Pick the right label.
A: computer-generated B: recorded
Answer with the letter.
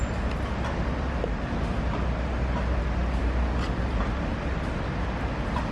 B